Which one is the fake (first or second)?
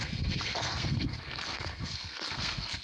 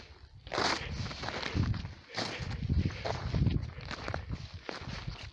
first